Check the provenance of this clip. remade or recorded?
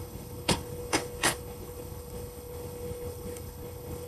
remade